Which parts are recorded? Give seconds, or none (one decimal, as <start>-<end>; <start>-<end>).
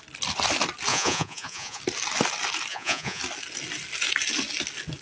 0.0-0.9; 1.8-2.7; 3.2-5.0